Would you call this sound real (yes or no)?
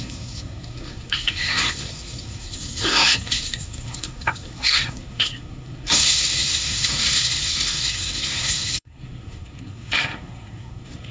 no